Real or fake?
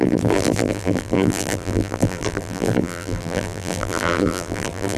fake